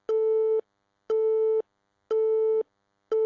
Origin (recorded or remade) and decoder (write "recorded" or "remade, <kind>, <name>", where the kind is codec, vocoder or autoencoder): recorded